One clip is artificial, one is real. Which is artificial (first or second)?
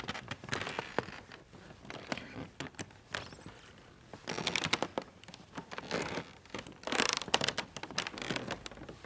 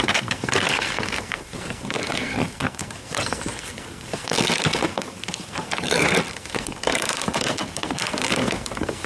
second